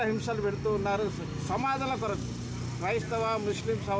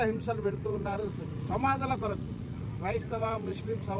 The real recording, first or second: first